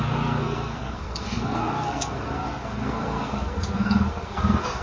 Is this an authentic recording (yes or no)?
no